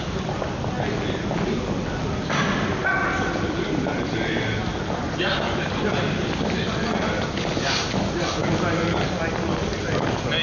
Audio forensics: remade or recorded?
recorded